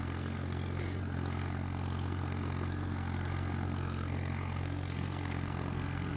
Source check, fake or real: fake